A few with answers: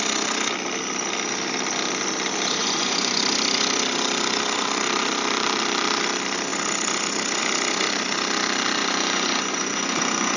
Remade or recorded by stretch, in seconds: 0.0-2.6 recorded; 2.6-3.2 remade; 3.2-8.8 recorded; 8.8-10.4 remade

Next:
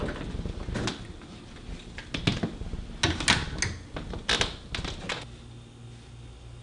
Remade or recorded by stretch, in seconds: 0.0-6.6 recorded

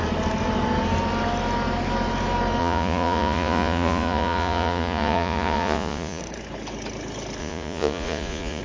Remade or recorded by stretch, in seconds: 0.0-2.6 recorded; 2.6-6.2 remade; 6.2-7.4 recorded; 7.4-8.6 remade

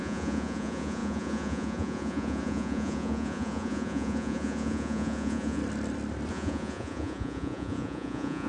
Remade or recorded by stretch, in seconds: 0.0-5.6 remade; 5.6-6.3 recorded; 6.3-8.5 remade